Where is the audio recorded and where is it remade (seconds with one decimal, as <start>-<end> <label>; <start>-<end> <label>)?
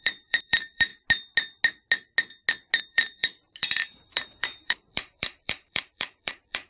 0.0-0.9 remade; 0.9-2.8 recorded; 2.8-6.7 remade